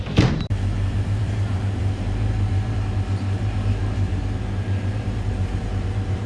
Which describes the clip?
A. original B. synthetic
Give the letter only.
B